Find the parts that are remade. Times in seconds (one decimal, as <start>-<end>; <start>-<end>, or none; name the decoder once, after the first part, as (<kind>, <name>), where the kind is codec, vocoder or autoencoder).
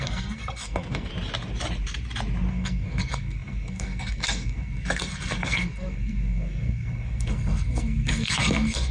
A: 0.0-1.1 (codec, SNAC); 2.5-8.9